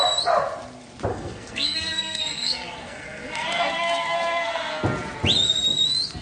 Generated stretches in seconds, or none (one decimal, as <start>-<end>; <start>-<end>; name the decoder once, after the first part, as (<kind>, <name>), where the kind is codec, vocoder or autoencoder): 1.1-4.8 (codec, SNAC)